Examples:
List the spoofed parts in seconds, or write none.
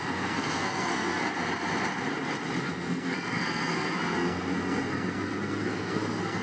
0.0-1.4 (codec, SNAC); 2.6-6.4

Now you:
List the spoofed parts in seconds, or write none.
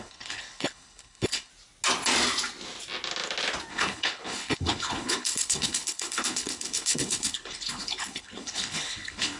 0.0-1.5 (codec, HILCodec); 3.7-9.4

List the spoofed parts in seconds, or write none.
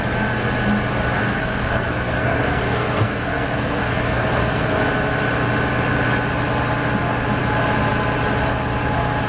1.2-4.8 (codec, SNAC)